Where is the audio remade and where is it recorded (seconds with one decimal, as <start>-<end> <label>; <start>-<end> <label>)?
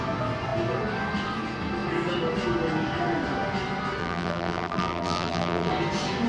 0.0-4.0 recorded; 4.0-5.7 remade; 5.7-6.3 recorded